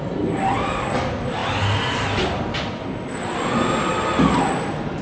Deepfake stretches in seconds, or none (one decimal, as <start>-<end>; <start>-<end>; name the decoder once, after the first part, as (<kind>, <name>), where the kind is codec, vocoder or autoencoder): none